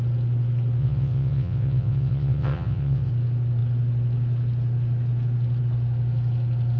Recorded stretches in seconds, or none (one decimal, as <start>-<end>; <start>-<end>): 0.0-0.8; 3.1-6.8